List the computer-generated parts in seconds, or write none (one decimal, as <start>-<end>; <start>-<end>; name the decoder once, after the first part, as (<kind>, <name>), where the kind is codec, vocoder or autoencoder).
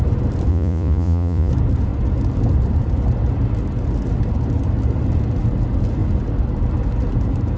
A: 0.5-1.5 (vocoder, Vocos)